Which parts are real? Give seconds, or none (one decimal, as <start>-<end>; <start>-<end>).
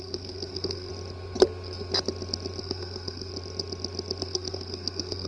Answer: 0.9-2.6; 3.3-4.2